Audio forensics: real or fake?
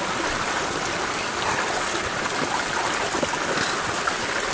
real